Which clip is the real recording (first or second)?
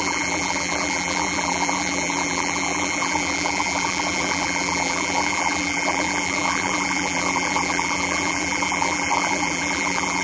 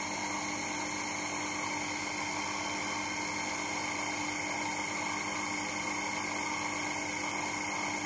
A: second